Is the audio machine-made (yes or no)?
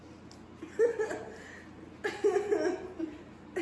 no